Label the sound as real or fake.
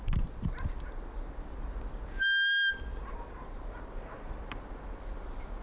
real